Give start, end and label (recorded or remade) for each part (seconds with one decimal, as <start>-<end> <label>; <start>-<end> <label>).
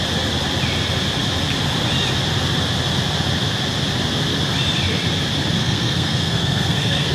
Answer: 0.0-5.6 recorded; 5.6-7.1 remade